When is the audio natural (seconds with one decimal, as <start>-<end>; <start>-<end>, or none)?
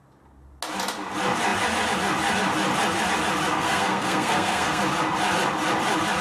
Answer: 0.0-3.5; 4.8-6.2